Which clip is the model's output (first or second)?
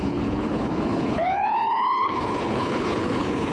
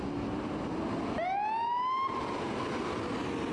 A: first